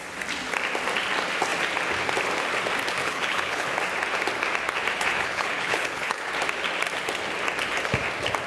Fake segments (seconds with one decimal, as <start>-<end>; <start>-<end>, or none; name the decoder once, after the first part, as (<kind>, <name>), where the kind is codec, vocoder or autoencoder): 3.0-3.7 (codec, HILCodec); 5.1-6.3